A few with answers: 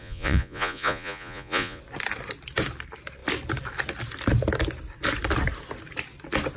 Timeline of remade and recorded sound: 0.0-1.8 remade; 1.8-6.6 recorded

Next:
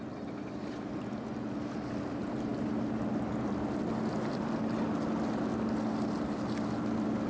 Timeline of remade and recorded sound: 0.0-7.3 recorded

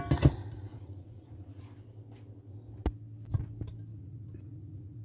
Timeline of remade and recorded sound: 0.0-0.7 recorded; 0.7-1.6 remade; 1.6-3.9 recorded; 3.9-5.0 remade

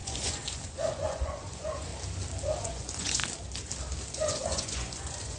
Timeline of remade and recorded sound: 0.0-1.9 remade; 1.9-2.6 recorded; 2.6-3.2 remade; 3.2-4.1 recorded; 4.1-5.4 remade